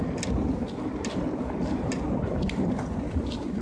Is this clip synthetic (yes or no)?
no